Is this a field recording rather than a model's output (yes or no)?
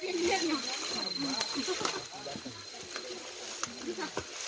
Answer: yes